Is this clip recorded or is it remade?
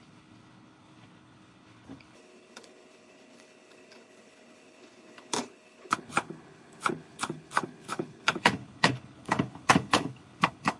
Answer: remade